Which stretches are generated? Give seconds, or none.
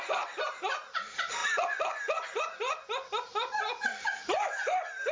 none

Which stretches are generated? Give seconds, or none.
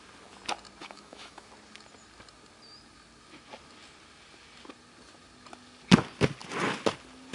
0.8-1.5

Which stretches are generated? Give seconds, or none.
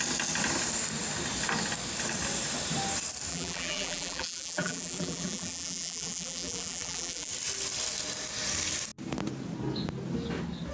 3.3-7.3